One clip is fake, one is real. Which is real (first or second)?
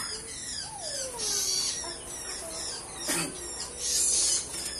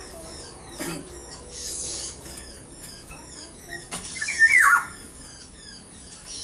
first